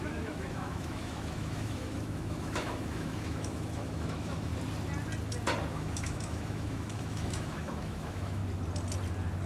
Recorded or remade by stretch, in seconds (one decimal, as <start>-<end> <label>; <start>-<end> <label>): 0.0-4.5 remade; 4.5-5.7 recorded; 5.7-8.4 remade; 8.4-9.5 recorded